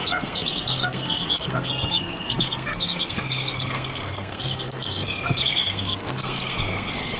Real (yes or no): no